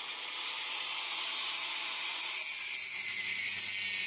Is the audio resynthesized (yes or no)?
no